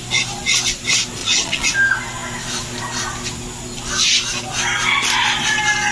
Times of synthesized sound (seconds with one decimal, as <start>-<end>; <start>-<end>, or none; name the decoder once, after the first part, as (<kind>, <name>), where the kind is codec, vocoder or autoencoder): 1.2-1.7 (vocoder, Vocos)